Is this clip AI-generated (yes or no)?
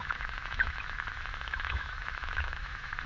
yes